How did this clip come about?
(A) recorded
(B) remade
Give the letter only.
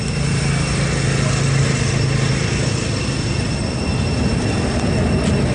A